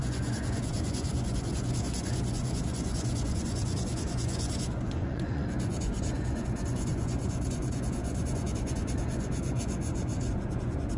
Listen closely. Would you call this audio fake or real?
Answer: fake